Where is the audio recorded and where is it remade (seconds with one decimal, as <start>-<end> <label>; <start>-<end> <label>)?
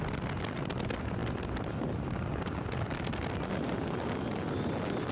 0.0-5.1 recorded